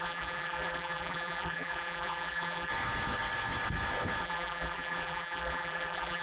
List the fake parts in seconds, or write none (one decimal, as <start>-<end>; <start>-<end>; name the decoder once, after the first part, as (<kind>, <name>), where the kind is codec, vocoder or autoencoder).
0.0-2.7 (vocoder, BigVGAN v2); 4.2-6.2